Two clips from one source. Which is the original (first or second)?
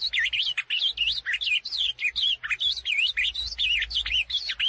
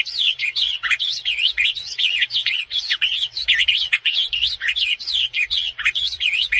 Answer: first